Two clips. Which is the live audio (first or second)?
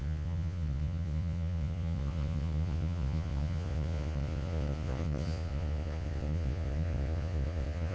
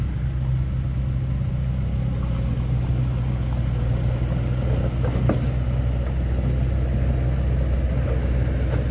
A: second